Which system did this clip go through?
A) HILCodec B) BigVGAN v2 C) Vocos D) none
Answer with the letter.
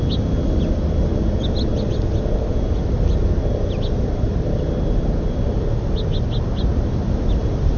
D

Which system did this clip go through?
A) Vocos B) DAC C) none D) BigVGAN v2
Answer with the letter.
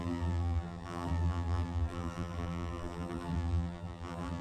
D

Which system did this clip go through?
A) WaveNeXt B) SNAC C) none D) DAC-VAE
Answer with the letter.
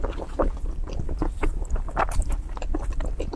C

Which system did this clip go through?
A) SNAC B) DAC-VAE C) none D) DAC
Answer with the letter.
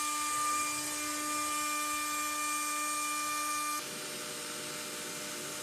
C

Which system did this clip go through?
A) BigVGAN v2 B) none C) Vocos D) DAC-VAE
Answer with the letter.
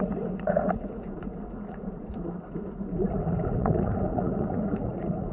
C